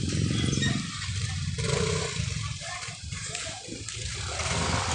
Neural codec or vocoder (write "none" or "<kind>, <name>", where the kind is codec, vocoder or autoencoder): none